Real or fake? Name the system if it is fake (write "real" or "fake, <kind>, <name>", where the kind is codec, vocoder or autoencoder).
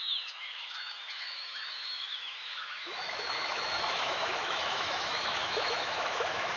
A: fake, autoencoder, DAC-VAE